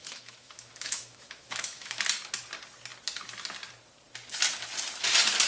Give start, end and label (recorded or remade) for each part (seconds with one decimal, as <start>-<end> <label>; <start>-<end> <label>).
0.0-2.0 remade; 2.0-5.5 recorded